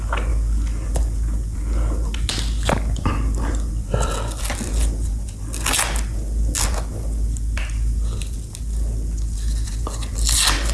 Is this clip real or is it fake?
real